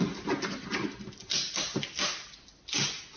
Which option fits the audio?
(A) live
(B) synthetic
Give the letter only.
A